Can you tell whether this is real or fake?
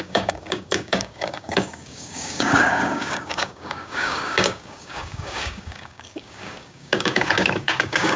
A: fake